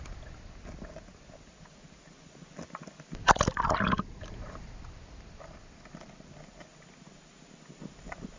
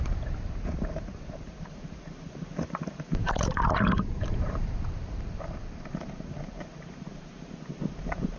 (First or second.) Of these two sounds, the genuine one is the first